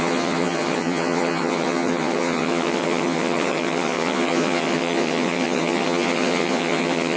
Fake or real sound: fake